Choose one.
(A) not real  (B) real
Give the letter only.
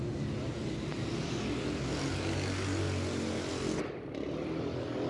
B